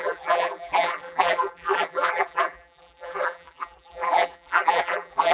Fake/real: fake